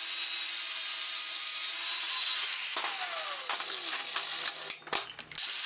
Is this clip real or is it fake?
real